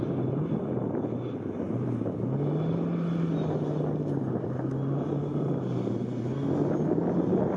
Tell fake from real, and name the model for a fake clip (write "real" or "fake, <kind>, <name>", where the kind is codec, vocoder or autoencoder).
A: real